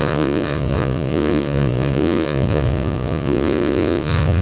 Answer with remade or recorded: remade